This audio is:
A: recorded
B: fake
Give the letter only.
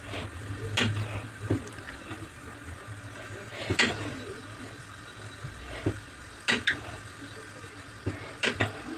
A